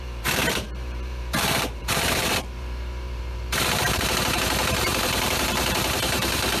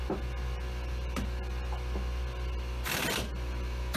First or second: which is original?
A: second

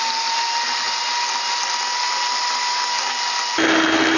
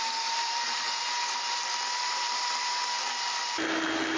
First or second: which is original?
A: first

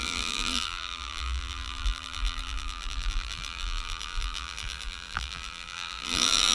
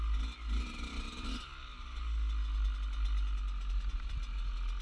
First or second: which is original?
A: second